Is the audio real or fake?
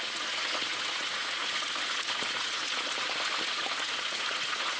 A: fake